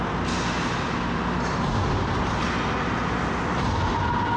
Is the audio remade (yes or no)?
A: no